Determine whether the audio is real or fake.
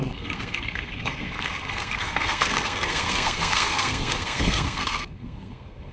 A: fake